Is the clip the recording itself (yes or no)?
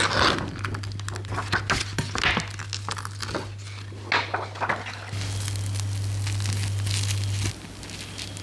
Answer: yes